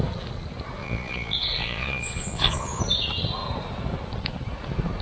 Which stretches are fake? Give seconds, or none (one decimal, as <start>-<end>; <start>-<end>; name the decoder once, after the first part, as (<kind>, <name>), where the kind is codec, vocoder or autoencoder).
0.8-2.8 (vocoder, Vocos)